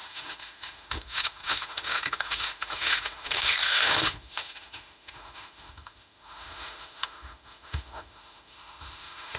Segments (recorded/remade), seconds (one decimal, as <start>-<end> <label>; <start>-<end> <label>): 0.0-9.4 remade